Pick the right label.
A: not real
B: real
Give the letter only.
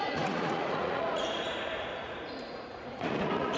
A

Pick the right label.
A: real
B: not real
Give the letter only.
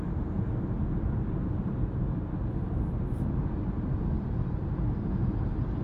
A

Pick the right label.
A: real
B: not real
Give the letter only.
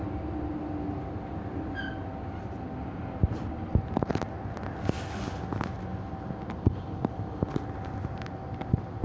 A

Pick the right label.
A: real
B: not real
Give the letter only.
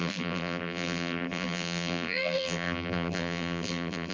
B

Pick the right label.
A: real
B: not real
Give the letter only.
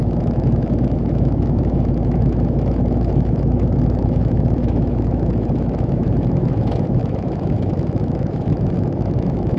B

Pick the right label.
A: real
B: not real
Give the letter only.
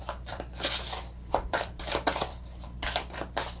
B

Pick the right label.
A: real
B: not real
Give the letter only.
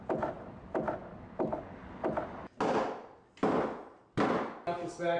A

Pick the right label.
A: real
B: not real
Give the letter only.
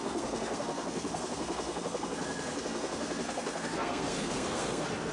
B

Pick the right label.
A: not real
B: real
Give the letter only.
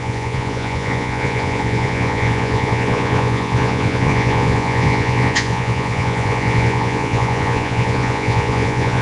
A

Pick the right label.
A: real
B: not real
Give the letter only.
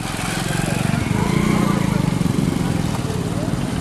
A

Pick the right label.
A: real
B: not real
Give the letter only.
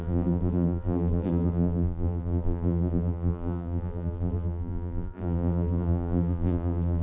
B